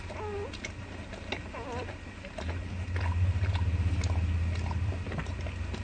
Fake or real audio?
real